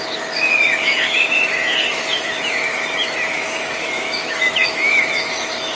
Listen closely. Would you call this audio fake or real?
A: fake